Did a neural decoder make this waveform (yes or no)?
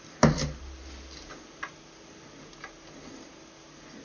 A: no